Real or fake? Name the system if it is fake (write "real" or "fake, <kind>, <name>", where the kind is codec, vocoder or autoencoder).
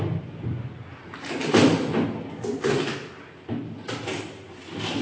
real